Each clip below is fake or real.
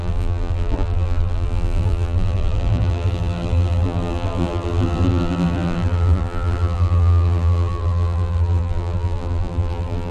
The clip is fake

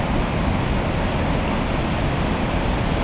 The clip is real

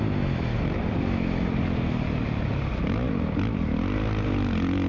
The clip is real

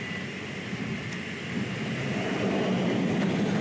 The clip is real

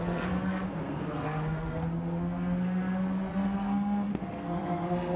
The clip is fake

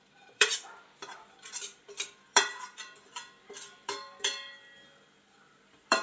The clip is fake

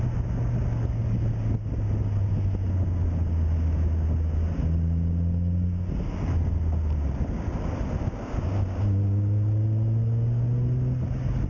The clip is real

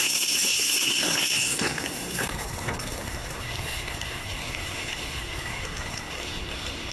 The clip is fake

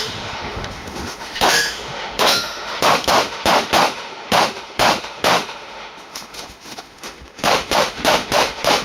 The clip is fake